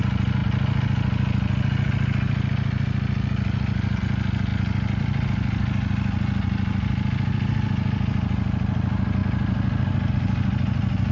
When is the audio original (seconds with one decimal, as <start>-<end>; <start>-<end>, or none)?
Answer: 0.0-11.1